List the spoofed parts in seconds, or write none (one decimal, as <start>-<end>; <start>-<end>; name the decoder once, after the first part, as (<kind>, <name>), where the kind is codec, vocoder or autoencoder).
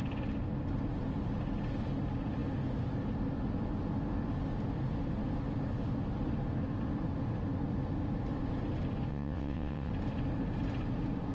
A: 9.1-9.9 (vocoder, WaveNeXt)